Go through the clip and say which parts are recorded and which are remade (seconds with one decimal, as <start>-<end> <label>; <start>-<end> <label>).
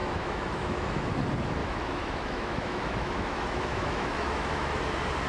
0.0-1.1 remade; 1.1-1.6 recorded; 1.6-4.8 remade; 4.8-5.3 recorded